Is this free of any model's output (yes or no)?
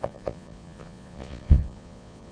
no